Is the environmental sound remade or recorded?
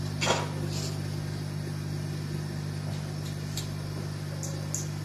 recorded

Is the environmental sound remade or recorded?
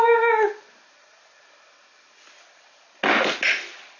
recorded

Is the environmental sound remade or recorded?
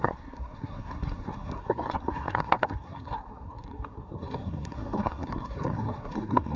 remade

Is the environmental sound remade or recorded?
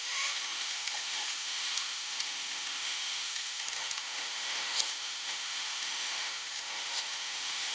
remade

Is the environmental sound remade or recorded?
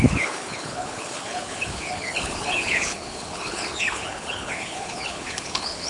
remade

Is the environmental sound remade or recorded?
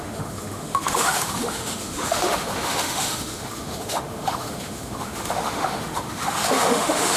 remade